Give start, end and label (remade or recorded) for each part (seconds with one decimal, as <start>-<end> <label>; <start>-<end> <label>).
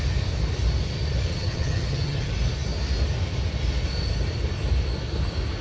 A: 0.0-1.3 recorded; 1.3-2.3 remade; 2.3-5.6 recorded